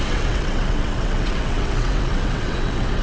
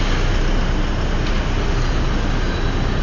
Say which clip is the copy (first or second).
first